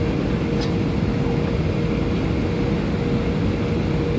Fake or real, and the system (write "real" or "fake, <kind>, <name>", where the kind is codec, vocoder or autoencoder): real